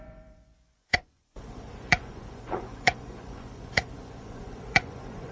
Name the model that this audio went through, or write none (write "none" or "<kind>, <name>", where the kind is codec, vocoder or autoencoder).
vocoder, Vocos